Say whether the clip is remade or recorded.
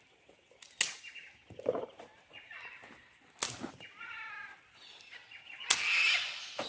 recorded